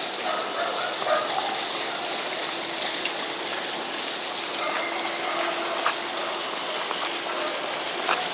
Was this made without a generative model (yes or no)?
yes